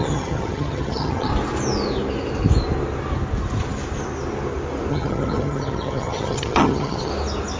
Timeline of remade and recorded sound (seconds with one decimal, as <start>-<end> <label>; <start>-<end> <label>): 0.0-1.3 remade; 1.3-4.9 recorded; 4.9-7.1 remade; 7.1-7.6 recorded